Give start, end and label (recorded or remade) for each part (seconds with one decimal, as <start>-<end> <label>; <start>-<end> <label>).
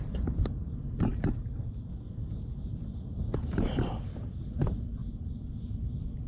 0.0-0.6 remade; 0.6-3.1 recorded; 3.1-6.3 remade